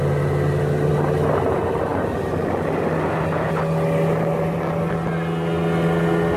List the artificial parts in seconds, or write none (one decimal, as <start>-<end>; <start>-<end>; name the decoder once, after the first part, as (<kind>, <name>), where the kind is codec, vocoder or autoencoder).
none

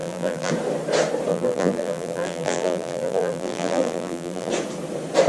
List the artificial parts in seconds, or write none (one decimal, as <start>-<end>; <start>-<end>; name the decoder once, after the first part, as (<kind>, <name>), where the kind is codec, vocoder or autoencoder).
0.0-0.5 (vocoder, BigVGAN v2); 1.3-4.5